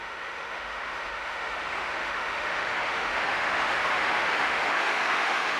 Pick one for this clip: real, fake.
fake